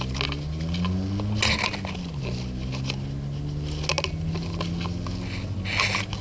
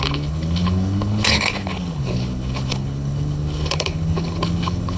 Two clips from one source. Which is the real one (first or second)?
first